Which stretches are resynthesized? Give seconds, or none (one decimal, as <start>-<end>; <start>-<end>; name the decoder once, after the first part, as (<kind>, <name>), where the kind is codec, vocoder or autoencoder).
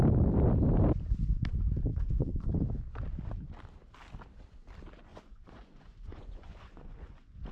1.9-2.5 (vocoder, Vocos); 5.1-7.5